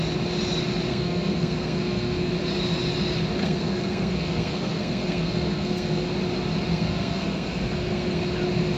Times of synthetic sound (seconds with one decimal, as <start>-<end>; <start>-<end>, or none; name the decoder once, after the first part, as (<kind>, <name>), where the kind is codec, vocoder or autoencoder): 0.9-2.3 (codec, SNAC); 3.4-6.1; 6.7-8.2